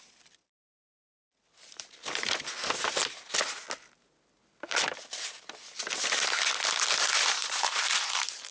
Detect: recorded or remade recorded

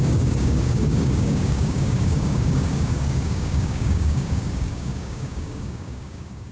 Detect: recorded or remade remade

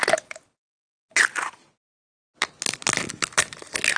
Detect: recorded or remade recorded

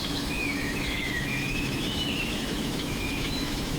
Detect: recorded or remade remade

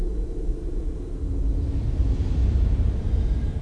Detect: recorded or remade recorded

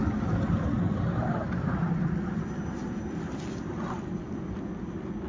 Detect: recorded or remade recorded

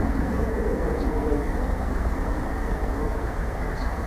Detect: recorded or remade remade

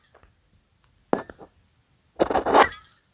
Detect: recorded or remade recorded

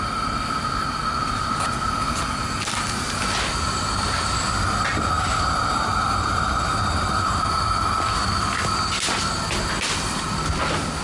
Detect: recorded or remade recorded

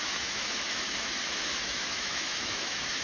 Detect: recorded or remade remade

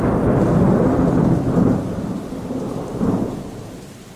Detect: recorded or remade recorded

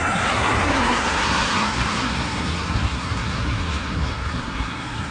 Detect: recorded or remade remade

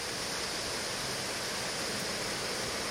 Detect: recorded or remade recorded